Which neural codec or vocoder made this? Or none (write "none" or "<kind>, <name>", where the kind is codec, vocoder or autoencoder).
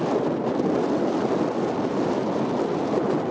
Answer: none